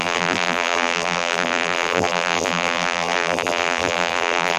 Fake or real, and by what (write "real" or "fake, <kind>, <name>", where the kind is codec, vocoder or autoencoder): fake, vocoder, BigVGAN v2